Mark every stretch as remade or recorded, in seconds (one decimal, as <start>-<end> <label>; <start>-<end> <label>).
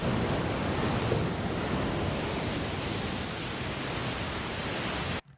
0.0-4.0 recorded; 4.0-4.7 remade; 4.7-5.4 recorded